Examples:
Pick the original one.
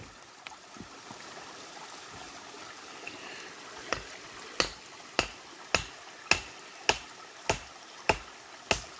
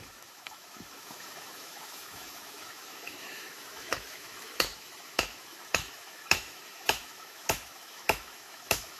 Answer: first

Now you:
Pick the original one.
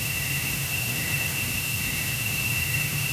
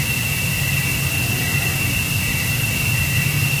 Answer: second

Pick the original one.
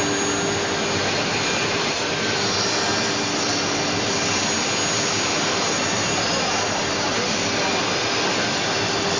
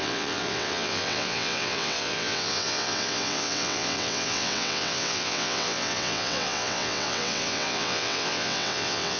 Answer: first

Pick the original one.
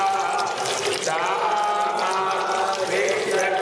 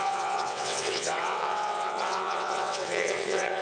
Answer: first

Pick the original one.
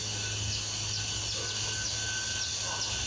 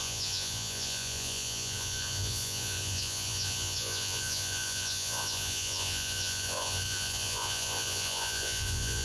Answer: first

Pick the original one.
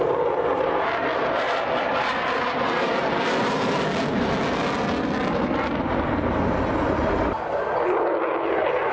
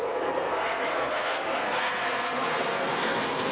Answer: first